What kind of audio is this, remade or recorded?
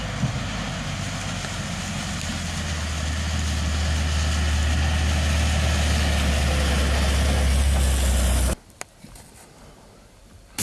recorded